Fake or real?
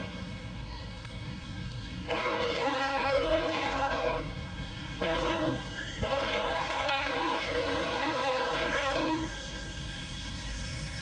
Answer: fake